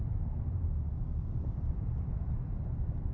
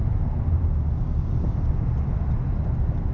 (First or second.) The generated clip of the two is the first